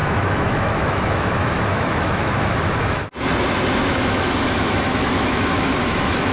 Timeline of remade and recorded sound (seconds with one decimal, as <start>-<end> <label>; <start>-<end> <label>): 0.0-3.0 remade; 3.0-3.9 recorded; 3.9-6.3 remade